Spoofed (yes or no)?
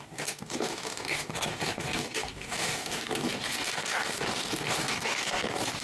yes